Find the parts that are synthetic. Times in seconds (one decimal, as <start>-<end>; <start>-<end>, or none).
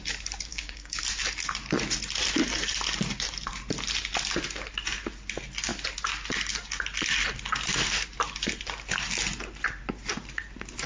0.5-1.0